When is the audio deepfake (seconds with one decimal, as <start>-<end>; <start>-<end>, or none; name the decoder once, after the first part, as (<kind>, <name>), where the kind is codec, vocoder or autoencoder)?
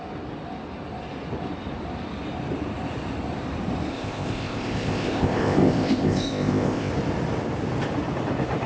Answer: 3.9-6.9 (codec, ZipCodec)